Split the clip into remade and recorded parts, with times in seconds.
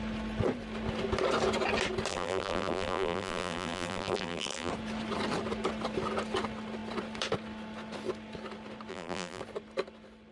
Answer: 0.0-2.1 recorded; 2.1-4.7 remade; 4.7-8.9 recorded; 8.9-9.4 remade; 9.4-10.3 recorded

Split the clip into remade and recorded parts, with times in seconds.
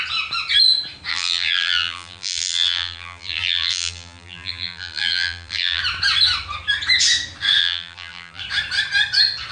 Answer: 0.0-1.1 recorded; 1.1-5.8 remade; 5.8-7.6 recorded; 7.6-8.4 remade; 8.4-9.5 recorded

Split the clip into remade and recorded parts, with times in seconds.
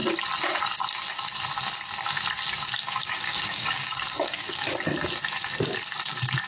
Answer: 0.0-2.8 recorded; 2.8-4.8 remade; 4.8-6.5 recorded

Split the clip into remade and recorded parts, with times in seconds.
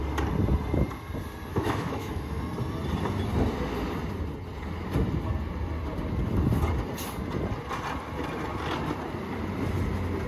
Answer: 0.0-1.5 recorded; 1.5-2.4 remade; 2.4-10.3 recorded